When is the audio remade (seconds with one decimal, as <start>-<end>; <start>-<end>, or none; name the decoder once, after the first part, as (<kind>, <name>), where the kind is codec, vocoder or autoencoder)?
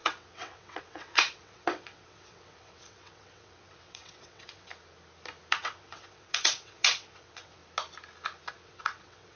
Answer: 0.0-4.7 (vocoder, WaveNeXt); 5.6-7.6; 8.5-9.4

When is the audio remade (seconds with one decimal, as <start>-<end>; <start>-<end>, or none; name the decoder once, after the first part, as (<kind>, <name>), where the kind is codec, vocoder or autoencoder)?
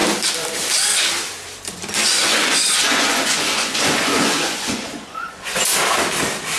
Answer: 2.0-5.6 (vocoder, Vocos)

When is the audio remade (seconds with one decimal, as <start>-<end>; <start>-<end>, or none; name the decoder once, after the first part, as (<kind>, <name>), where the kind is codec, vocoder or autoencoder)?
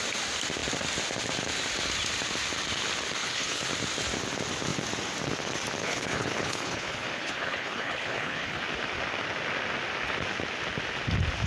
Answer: 3.2-3.7 (codec, HILCodec); 5.8-8.6